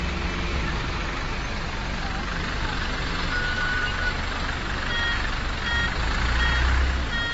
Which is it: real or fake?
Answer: real